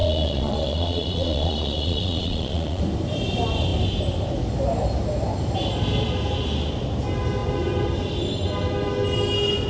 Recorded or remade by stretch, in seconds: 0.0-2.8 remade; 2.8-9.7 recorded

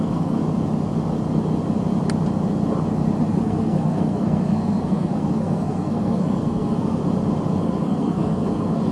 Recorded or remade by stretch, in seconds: 0.0-0.4 remade; 0.4-3.3 recorded; 3.3-7.0 remade; 7.0-7.5 recorded; 7.5-8.9 remade

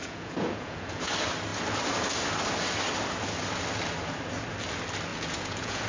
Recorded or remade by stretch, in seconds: 0.0-1.1 remade; 1.1-5.1 recorded; 5.1-5.9 remade